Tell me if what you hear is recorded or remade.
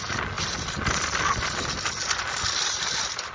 recorded